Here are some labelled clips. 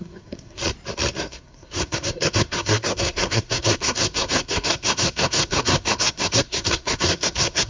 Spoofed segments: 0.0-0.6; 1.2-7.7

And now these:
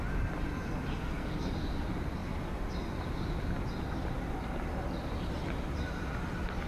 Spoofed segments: 0.9-1.5

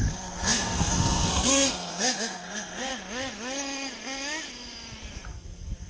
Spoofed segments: 0.0-2.9

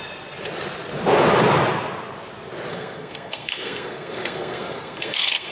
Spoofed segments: 2.7-5.5

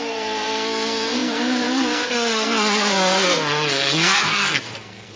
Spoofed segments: 0.0-5.2

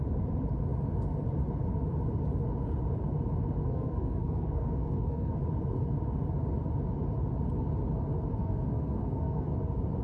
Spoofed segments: 3.6-5.4; 8.4-9.5